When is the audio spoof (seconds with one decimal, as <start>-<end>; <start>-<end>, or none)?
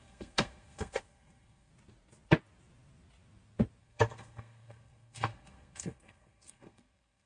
0.0-1.7; 3.8-7.3